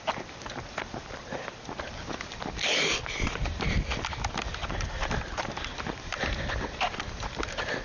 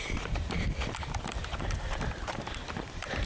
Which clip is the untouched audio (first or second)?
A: first